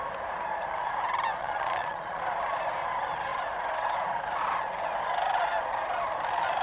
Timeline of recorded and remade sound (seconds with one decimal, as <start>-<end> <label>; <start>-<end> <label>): 0.0-1.4 recorded; 1.4-2.2 remade; 2.2-6.6 recorded